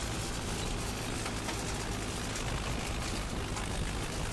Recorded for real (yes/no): yes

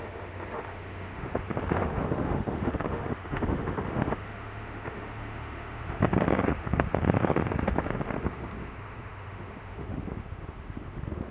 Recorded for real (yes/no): no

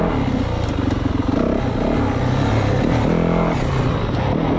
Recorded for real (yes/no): yes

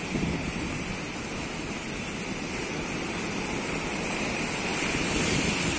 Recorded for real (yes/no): yes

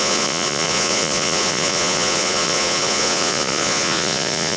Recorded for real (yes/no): no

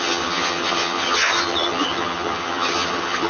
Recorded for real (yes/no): no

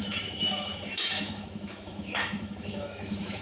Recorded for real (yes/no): no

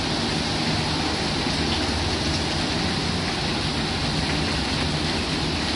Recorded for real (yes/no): yes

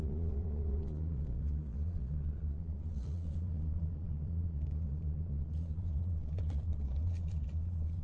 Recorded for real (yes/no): no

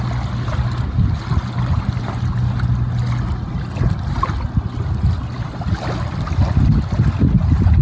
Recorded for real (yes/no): yes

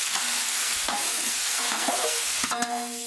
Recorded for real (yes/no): no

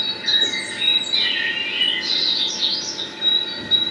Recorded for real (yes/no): yes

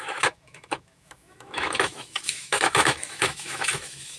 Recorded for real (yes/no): no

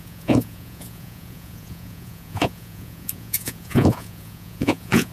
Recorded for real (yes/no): no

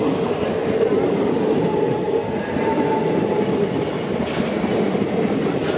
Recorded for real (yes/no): yes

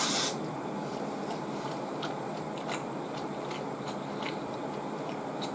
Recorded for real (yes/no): yes